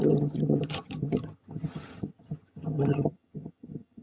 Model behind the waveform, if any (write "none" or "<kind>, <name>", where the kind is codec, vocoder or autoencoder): vocoder, HiFi-GAN